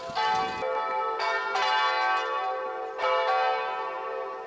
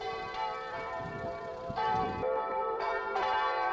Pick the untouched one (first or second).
first